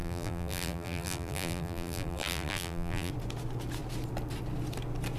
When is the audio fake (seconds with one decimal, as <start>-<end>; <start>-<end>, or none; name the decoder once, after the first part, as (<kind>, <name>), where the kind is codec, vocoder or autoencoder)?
0.0-3.1 (vocoder, BigVGAN v2)